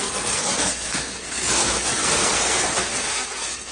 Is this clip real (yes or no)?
no